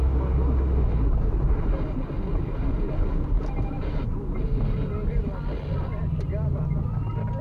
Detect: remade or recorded recorded